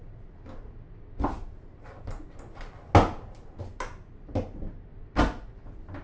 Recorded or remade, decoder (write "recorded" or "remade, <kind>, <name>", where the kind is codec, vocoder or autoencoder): recorded